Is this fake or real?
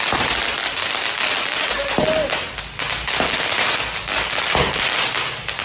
real